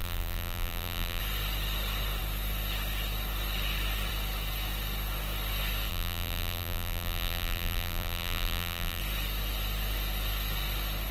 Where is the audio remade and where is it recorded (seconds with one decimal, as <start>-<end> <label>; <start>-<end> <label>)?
0.0-1.2 remade; 1.2-5.9 recorded; 5.9-9.0 remade; 9.0-11.1 recorded